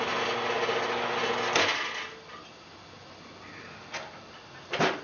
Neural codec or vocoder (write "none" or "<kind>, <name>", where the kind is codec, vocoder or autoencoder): none